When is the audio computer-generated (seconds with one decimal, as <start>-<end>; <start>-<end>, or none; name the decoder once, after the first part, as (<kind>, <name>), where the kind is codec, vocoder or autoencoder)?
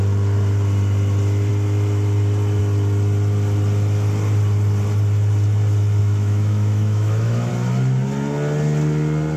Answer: 6.0-7.5 (autoencoder, DAC-VAE)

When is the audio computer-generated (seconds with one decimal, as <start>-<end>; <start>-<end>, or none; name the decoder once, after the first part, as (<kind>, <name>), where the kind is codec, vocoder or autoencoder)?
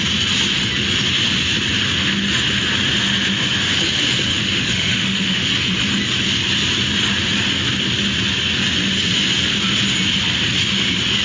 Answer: 4.3-5.5 (autoencoder, DAC-VAE)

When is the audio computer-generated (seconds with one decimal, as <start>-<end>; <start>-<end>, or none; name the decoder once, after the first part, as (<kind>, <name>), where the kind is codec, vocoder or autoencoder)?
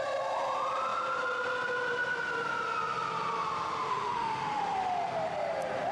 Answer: 3.9-4.6 (autoencoder, DAC-VAE)